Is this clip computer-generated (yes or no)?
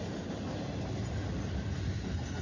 no